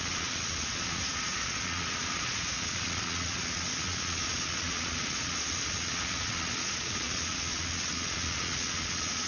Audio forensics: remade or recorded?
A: remade